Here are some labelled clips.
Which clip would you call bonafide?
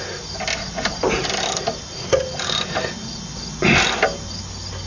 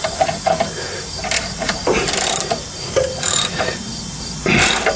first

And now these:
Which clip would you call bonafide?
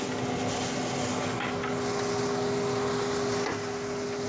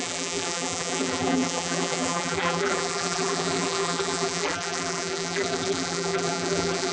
first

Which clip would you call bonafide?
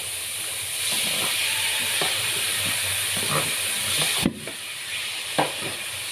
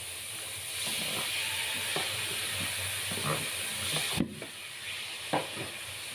second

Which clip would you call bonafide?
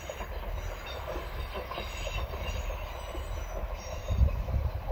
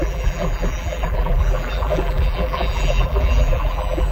first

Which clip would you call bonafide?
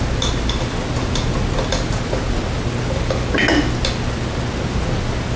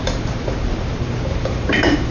first